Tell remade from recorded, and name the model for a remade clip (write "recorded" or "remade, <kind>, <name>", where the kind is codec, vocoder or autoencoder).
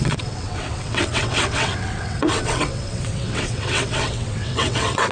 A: remade, vocoder, WaveNeXt